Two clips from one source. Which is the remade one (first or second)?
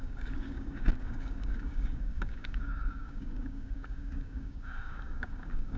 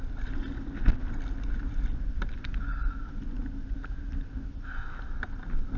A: first